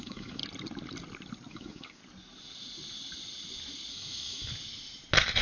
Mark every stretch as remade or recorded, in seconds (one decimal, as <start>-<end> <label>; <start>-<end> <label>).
0.0-0.4 remade; 0.4-1.5 recorded; 1.5-2.0 remade; 2.0-3.9 recorded; 3.9-4.5 remade; 4.5-5.4 recorded